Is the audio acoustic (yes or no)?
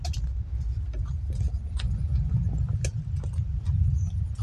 yes